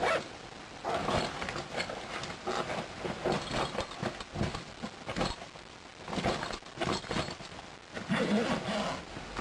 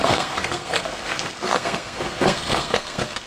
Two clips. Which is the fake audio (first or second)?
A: second